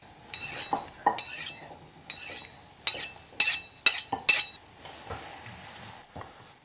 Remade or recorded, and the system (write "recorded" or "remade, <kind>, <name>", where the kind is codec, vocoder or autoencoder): recorded